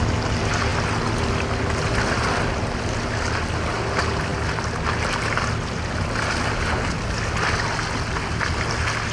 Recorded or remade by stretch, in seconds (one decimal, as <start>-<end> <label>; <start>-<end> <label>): 0.0-9.1 recorded